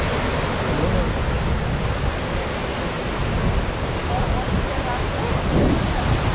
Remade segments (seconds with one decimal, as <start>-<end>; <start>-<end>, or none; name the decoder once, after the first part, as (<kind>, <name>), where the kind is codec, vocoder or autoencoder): none